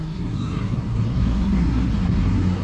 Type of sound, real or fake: fake